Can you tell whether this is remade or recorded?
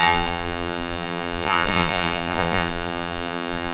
remade